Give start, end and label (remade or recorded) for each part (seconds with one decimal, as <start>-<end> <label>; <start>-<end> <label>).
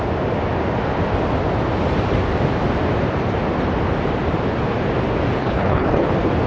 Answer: 0.0-5.4 recorded; 5.4-6.1 remade; 6.1-6.5 recorded